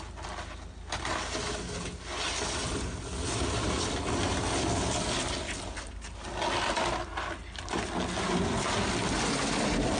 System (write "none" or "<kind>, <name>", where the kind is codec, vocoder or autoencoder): none